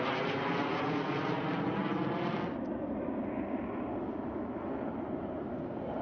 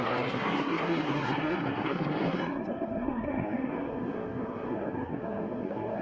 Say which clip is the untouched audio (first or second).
first